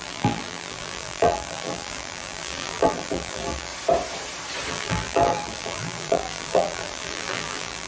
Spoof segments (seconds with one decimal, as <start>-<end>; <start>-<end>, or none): 0.0-3.7; 4.7-7.9